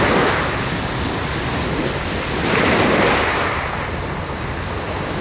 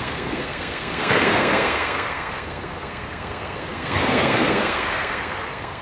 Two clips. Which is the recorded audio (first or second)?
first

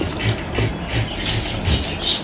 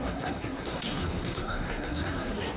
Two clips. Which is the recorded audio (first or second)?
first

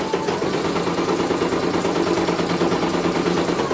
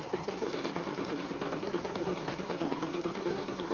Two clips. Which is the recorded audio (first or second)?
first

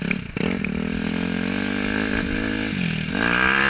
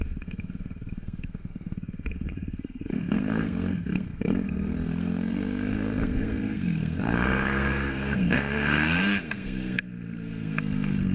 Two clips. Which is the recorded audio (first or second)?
first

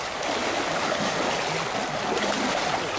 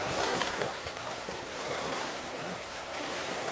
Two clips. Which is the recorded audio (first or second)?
first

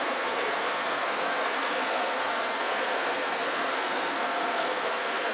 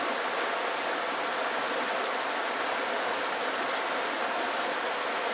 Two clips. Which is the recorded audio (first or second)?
second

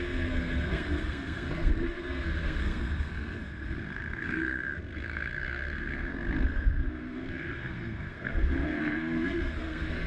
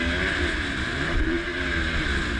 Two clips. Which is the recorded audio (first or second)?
second